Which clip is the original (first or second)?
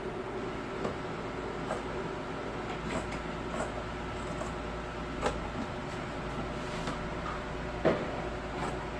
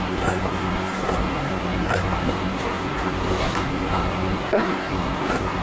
first